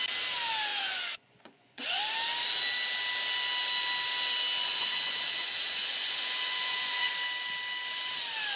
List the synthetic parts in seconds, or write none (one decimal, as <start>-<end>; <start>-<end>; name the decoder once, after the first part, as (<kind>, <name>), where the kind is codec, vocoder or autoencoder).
0.7-2.0 (vocoder, Vocos); 4.6-7.1